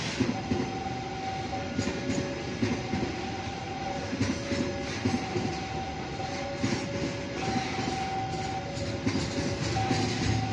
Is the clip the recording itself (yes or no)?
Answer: yes